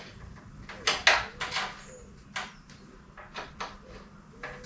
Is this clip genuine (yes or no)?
yes